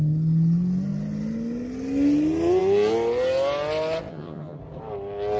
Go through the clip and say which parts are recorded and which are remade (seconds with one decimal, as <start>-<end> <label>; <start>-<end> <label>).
0.0-4.1 recorded; 4.1-4.6 remade; 4.6-5.4 recorded